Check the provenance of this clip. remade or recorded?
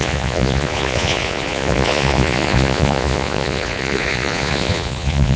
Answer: remade